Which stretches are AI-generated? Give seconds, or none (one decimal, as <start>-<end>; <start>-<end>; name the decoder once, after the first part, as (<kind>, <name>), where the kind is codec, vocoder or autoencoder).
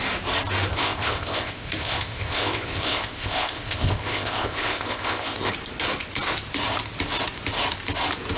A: 0.7-5.5 (codec, ZipCodec)